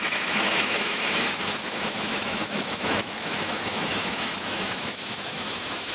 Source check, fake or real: fake